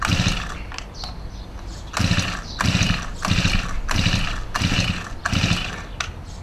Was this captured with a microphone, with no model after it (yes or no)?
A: yes